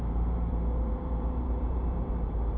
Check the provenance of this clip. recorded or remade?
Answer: remade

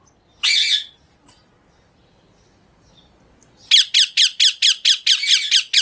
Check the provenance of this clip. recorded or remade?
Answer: recorded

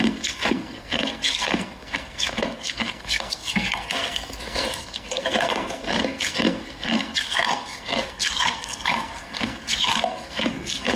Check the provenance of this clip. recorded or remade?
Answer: remade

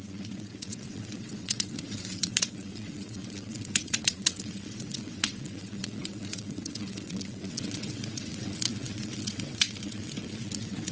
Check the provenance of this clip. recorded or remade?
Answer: remade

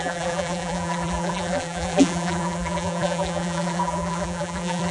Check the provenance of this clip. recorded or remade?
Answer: remade